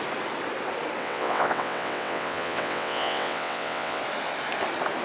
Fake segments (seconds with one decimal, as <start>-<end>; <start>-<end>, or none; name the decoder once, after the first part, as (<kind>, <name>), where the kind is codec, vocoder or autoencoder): 1.0-4.0 (vocoder, WaveNeXt)